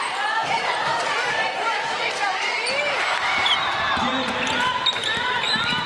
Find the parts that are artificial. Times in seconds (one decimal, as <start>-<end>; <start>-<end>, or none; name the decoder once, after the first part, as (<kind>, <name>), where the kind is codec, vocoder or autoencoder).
0.0-5.9 (vocoder, BigVGAN v2)